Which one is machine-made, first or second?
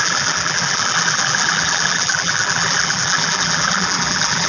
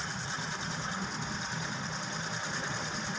first